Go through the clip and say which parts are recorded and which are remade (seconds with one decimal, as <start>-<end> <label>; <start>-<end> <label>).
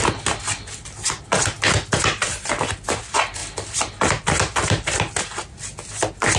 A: 0.0-6.4 recorded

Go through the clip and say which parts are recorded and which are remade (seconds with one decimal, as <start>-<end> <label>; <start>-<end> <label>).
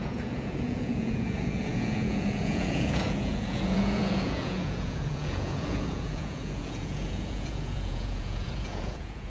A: 0.0-9.3 remade